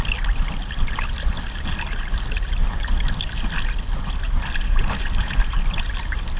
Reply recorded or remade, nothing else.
recorded